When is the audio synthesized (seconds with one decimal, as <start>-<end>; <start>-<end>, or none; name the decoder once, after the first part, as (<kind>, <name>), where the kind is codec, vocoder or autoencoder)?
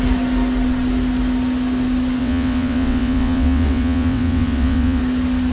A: 2.2-5.0 (vocoder, WaveNeXt)